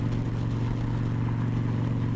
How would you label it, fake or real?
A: real